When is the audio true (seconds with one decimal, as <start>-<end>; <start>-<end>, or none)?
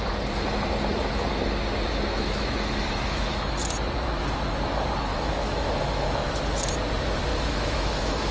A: 0.0-2.1; 3.4-5.1; 6.4-7.3